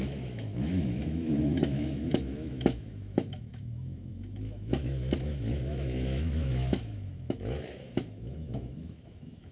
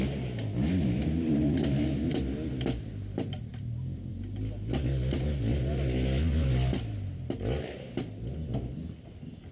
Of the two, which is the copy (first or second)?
first